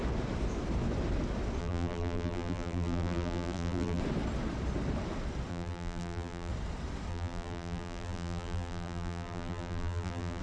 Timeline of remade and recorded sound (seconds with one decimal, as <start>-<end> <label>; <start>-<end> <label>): 0.0-1.6 recorded; 1.6-4.0 remade; 4.0-5.5 recorded; 5.5-6.5 remade; 6.5-7.1 recorded; 7.1-10.4 remade

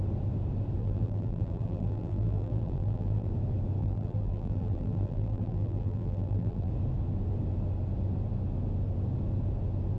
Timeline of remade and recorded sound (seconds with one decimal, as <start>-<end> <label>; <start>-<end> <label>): 0.0-0.8 recorded; 0.8-3.3 remade; 3.3-3.8 recorded; 3.8-6.7 remade; 6.7-10.0 recorded